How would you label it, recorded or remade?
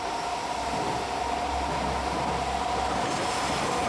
recorded